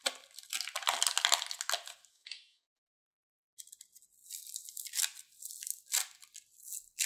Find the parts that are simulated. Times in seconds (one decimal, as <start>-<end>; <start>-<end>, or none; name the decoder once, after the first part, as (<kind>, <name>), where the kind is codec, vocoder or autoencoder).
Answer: 2.1-3.0 (codec, DAC)